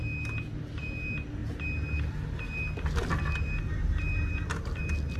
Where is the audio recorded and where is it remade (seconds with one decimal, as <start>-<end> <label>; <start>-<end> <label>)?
0.0-5.2 recorded

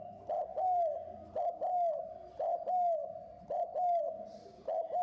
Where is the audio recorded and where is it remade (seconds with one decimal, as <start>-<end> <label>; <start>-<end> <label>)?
0.0-5.0 recorded

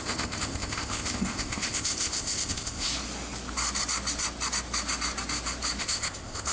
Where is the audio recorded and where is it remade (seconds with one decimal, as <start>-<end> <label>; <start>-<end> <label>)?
0.0-2.9 remade; 2.9-5.8 recorded; 5.8-6.5 remade

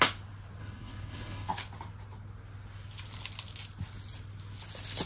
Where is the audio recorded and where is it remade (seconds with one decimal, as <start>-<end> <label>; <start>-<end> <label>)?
0.0-0.6 recorded; 0.6-1.5 remade; 1.5-5.1 recorded

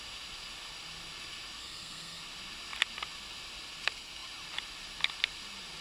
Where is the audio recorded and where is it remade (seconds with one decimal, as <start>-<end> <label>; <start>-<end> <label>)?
0.0-1.6 recorded; 1.6-2.2 remade; 2.2-5.8 recorded

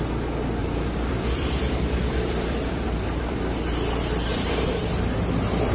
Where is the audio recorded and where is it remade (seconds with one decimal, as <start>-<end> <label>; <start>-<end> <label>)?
0.0-0.6 recorded; 0.6-3.4 remade; 3.4-4.3 recorded; 4.3-5.1 remade; 5.1-5.7 recorded